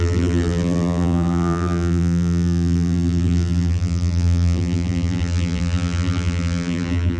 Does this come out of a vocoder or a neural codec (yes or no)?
yes